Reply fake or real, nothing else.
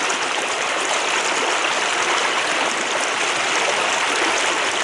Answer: real